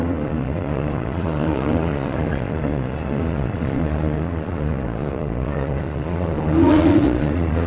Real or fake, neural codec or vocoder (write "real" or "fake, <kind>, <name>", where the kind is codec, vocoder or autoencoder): fake, vocoder, Vocos